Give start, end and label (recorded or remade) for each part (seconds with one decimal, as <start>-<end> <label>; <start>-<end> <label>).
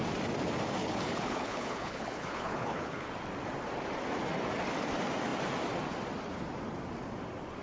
0.0-0.8 recorded; 0.8-3.1 remade; 3.1-7.6 recorded